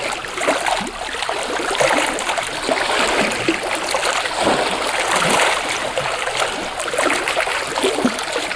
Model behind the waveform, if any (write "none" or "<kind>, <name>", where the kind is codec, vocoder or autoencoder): none